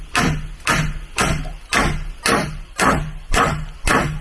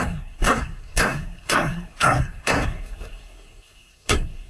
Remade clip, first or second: second